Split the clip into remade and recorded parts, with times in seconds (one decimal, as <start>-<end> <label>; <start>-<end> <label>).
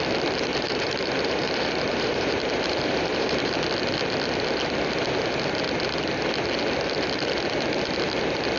0.0-0.5 recorded; 0.5-3.5 remade; 3.5-8.6 recorded